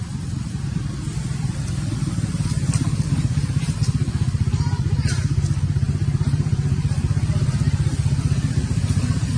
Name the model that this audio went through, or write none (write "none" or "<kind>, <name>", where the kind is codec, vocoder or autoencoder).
vocoder, BigVGAN v2